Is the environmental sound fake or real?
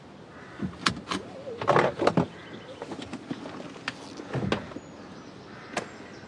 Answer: real